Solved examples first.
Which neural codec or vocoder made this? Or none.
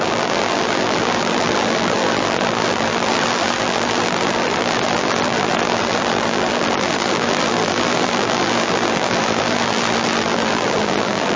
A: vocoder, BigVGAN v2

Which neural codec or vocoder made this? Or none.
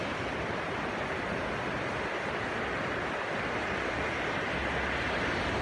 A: none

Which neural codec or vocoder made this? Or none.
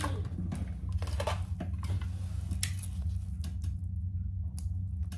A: none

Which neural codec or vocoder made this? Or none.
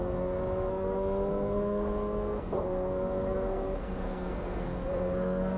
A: codec, SNAC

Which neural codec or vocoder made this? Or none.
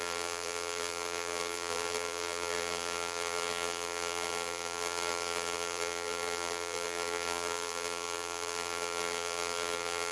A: vocoder, BigVGAN v2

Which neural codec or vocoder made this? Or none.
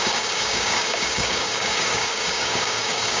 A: codec, DAC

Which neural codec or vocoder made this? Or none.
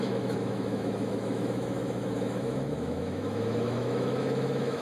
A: autoencoder, DAC-VAE